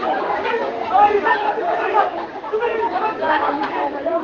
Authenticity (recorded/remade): remade